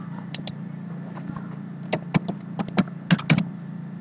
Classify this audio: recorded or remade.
recorded